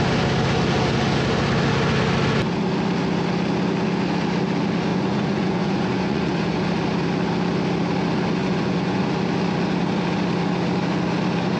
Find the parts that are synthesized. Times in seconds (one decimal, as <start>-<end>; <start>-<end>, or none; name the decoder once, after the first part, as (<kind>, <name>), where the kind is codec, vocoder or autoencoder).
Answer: 4.9-6.6 (vocoder, Vocos); 8.4-9.0